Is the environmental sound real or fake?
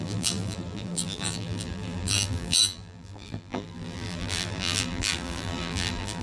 fake